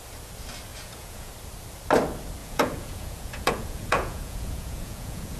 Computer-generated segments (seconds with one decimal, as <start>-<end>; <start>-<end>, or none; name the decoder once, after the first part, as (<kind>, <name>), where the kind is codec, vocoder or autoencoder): 0.7-1.3 (vocoder, Vocos); 2.4-5.4